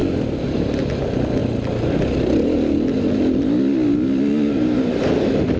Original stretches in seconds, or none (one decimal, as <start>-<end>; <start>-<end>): 0.0-5.6